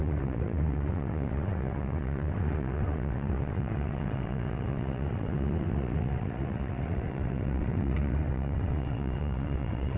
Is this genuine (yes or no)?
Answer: no